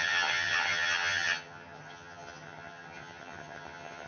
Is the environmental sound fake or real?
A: fake